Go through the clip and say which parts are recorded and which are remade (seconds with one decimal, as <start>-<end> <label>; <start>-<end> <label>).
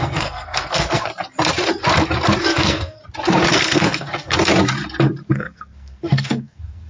0.0-1.1 remade; 1.1-2.4 recorded; 2.4-3.0 remade; 3.0-3.5 recorded; 3.5-4.3 remade; 4.3-5.3 recorded; 5.3-6.9 remade